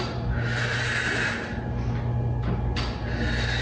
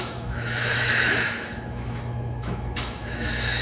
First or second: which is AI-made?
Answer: second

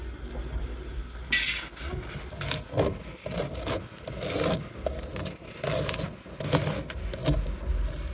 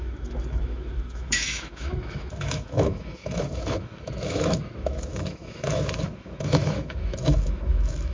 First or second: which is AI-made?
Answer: second